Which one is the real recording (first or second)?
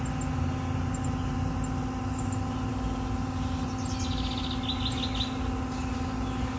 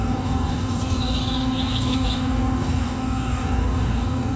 first